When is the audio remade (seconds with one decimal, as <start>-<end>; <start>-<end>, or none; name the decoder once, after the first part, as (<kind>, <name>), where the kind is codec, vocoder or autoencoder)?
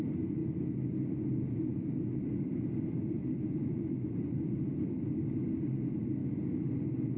none